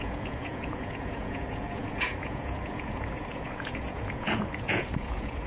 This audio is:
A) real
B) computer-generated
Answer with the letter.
B